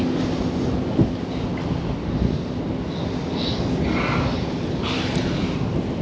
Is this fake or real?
real